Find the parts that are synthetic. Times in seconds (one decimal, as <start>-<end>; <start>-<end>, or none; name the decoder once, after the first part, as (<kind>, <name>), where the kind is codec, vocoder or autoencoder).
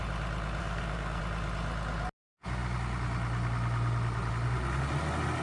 0.6-1.2 (codec, SNAC)